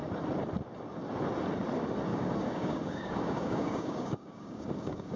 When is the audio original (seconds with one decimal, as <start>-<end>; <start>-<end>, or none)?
0.0-2.1